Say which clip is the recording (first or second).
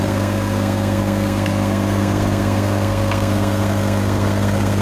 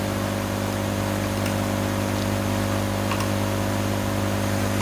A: second